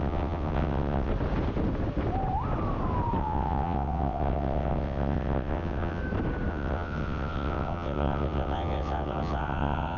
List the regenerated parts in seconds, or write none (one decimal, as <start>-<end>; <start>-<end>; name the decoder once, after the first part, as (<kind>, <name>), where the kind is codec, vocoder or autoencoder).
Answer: 0.0-1.1 (vocoder, WaveNeXt); 3.2-6.0; 6.5-10.0